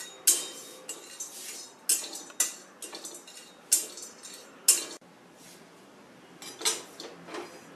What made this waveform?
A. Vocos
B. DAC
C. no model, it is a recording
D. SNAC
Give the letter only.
C